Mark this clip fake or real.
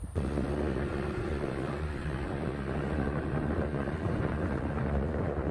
fake